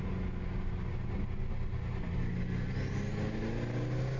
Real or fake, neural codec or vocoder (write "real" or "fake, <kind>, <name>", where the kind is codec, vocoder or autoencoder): real